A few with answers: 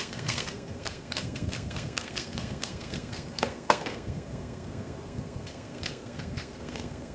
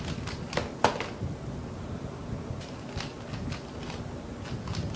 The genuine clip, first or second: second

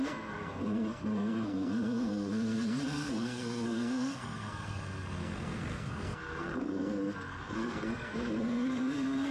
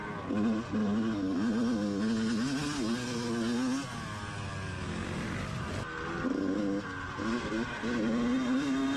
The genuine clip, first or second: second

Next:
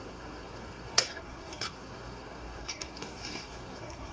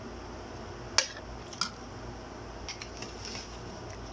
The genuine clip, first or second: second